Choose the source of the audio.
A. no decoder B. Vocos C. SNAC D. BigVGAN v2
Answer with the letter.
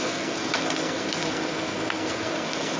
C